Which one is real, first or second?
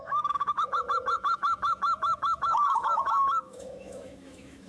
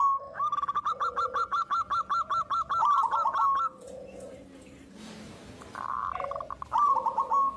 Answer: second